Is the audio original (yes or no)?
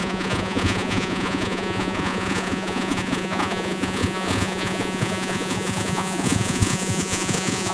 no